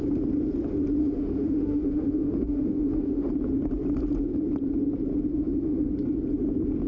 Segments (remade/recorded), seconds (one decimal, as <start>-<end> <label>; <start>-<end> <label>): 0.0-1.0 recorded; 1.0-3.3 remade; 3.3-5.3 recorded; 5.3-5.9 remade; 5.9-6.9 recorded